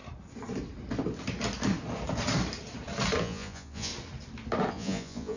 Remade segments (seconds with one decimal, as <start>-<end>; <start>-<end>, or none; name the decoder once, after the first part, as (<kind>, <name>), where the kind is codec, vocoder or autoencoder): 3.2-3.9 (vocoder, Vocos); 4.7-5.4